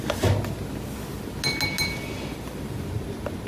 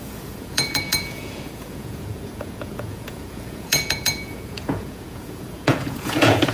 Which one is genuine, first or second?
first